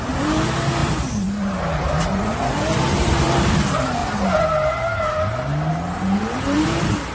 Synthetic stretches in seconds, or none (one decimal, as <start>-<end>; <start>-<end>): 0.0-4.0; 5.7-7.1